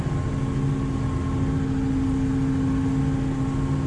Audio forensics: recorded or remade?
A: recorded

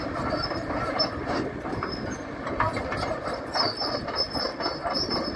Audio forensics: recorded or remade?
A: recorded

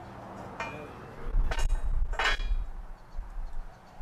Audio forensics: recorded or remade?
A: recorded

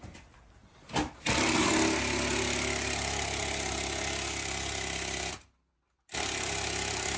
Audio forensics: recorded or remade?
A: recorded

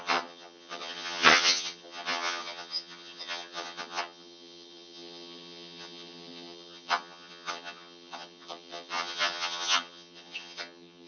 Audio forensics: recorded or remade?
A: remade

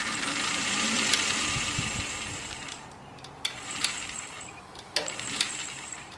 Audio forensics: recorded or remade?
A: remade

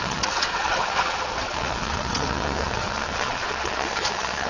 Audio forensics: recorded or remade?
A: remade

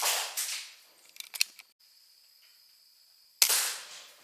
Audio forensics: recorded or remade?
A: recorded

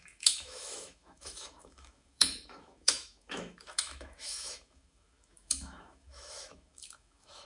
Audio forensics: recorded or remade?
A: remade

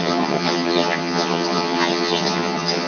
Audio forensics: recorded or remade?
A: remade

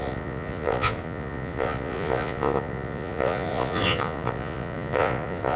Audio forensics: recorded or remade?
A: remade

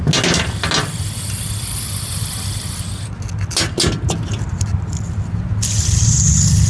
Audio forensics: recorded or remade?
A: recorded